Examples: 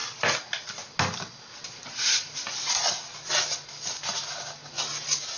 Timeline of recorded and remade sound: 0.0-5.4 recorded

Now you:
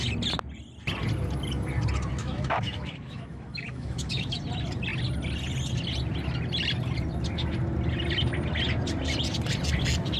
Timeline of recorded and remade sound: 0.0-2.2 recorded; 2.2-4.4 remade; 4.4-10.2 recorded